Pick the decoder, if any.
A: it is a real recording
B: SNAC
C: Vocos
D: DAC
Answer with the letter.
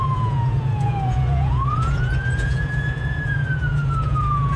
C